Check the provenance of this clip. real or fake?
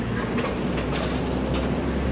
real